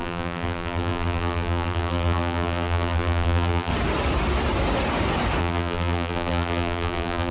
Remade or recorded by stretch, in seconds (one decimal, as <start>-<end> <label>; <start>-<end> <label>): 0.0-3.7 remade; 3.7-5.4 recorded; 5.4-7.3 remade